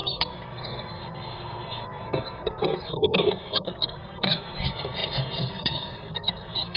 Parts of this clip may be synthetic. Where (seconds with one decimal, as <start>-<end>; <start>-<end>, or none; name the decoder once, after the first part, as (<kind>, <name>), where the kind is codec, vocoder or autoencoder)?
0.0-6.8 (codec, SNAC)